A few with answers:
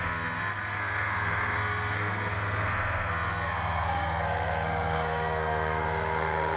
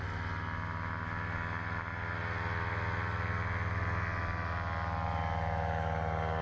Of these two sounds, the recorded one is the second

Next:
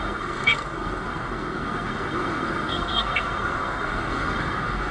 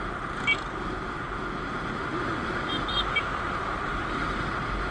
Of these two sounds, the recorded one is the second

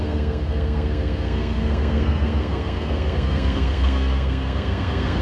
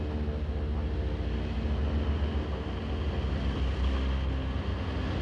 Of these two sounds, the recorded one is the second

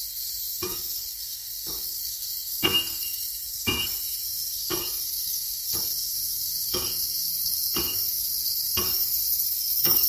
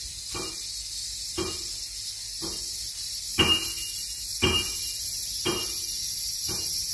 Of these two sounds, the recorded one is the second